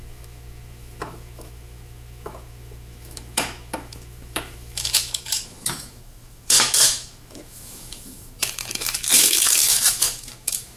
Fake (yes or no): yes